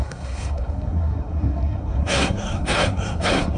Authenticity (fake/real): fake